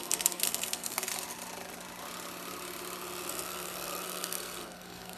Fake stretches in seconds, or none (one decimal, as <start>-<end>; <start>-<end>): 0.0-1.1; 3.3-5.2